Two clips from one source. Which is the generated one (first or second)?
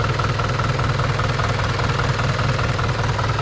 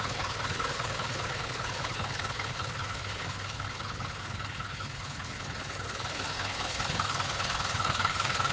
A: second